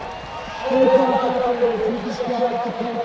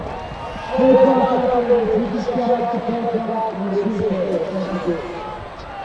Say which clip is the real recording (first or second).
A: second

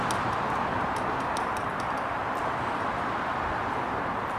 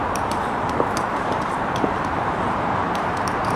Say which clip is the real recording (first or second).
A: first